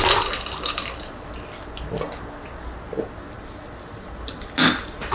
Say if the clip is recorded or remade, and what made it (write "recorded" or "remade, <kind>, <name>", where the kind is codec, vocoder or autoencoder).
recorded